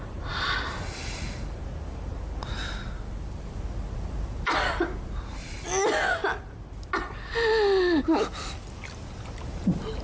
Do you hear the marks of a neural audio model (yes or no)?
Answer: no